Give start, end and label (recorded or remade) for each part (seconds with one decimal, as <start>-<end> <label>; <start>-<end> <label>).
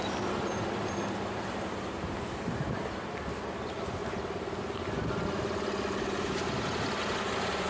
0.0-7.7 recorded